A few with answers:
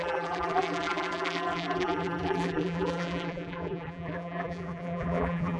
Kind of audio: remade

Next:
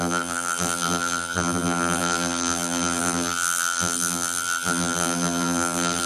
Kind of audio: remade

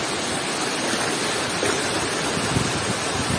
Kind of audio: recorded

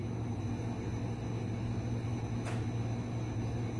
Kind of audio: recorded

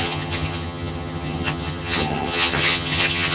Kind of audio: remade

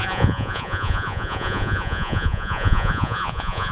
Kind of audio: remade